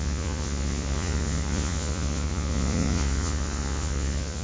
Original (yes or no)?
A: no